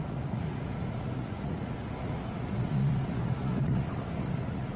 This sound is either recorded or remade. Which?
remade